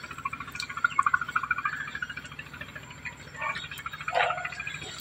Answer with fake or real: real